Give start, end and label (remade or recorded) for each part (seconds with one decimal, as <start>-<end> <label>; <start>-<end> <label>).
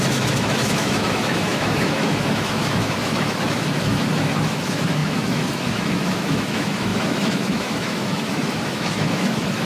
0.0-9.6 remade